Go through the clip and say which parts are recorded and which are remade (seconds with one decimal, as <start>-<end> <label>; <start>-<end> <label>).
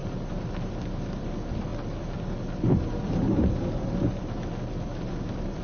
0.0-5.6 recorded